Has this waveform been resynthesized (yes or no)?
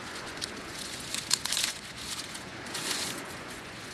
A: yes